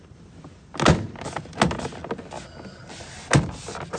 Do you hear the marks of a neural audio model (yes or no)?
no